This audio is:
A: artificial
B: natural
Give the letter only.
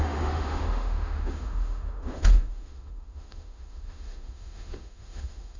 A